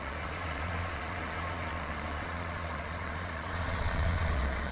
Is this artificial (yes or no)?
yes